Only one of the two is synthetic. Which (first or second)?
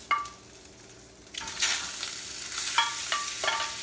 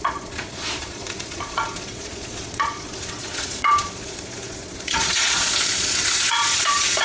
second